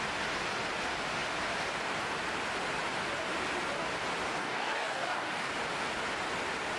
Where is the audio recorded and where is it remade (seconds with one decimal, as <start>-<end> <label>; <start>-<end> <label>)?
0.0-4.4 recorded; 4.4-5.5 remade; 5.5-6.8 recorded